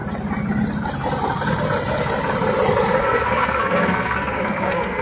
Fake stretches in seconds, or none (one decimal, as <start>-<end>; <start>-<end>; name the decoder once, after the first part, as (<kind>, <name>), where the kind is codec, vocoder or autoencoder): 3.0-5.0 (codec, SNAC)